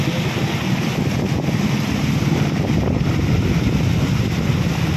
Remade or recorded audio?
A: recorded